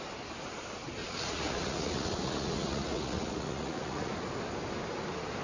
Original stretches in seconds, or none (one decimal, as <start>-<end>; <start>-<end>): 0.0-1.0; 4.1-5.4